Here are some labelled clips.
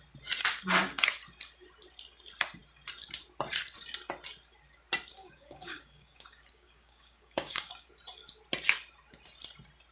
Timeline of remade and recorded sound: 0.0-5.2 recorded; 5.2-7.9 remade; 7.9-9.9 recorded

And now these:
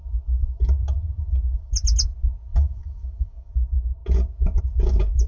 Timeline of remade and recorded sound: 0.0-2.5 recorded; 2.5-3.5 remade; 3.5-5.3 recorded

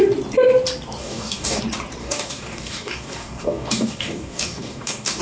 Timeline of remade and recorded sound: 0.0-1.0 recorded; 1.0-1.6 remade; 1.6-2.0 recorded; 2.0-5.2 remade

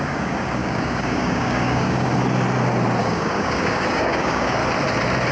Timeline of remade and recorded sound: 0.0-2.1 remade; 2.1-3.0 recorded; 3.0-4.6 remade; 4.6-5.3 recorded

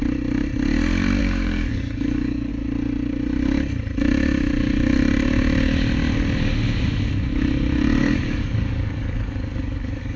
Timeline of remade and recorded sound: 0.0-1.2 recorded; 1.2-2.5 remade; 2.5-8.0 recorded; 8.0-10.2 remade

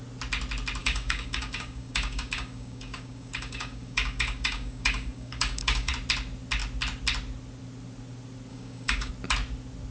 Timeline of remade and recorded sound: 0.0-0.8 recorded; 0.8-5.9 remade; 5.9-8.5 recorded; 8.5-9.1 remade; 9.1-9.9 recorded

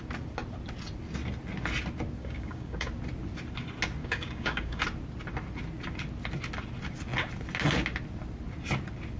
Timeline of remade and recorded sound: 0.0-2.2 recorded; 2.2-2.9 remade; 2.9-4.0 recorded; 4.0-4.8 remade; 4.8-9.2 recorded

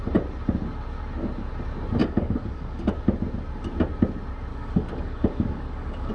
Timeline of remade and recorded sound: 0.0-2.0 recorded; 2.0-2.9 remade; 2.9-4.5 recorded; 4.5-6.1 remade